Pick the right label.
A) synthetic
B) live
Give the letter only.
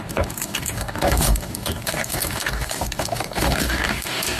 A